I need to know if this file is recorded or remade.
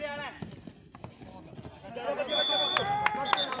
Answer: recorded